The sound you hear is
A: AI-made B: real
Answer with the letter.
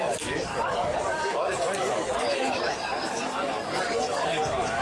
A